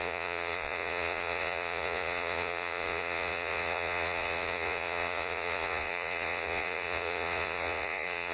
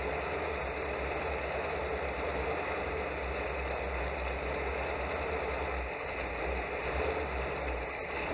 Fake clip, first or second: first